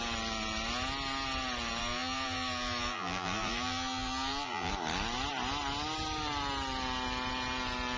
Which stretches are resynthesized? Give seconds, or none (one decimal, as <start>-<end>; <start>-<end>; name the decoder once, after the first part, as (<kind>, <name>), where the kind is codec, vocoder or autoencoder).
1.8-4.7 (vocoder, BigVGAN v2)

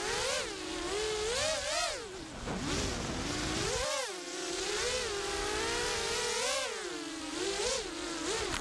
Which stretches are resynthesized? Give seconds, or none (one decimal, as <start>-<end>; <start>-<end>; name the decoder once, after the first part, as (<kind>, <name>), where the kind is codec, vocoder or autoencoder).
none

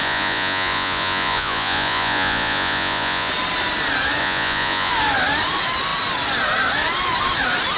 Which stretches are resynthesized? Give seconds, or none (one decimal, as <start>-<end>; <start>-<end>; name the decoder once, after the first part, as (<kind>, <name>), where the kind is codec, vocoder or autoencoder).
0.0-3.3 (vocoder, Vocos); 4.2-4.9

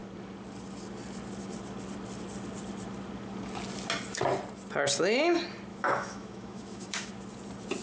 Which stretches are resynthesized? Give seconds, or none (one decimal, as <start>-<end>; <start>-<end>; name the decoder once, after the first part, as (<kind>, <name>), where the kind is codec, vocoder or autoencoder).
5.7-7.1 (autoencoder, DAC-VAE)

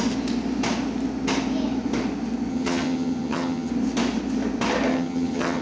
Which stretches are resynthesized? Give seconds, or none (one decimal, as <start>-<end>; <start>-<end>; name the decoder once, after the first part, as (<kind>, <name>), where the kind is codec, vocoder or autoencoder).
2.5-3.7 (vocoder, HiFi-GAN); 4.9-5.6

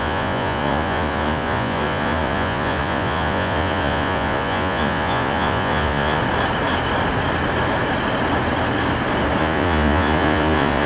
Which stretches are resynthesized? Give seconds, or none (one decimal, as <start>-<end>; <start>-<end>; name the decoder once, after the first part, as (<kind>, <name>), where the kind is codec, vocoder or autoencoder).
0.0-6.2 (vocoder, Vocos); 9.4-10.9

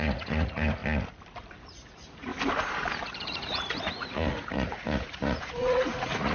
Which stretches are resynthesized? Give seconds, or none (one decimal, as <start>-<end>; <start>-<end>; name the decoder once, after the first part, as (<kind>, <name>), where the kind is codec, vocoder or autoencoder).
0.0-0.8 (vocoder, Vocos); 1.6-2.3; 3.2-6.3